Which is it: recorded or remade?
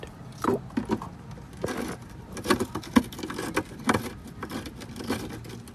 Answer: recorded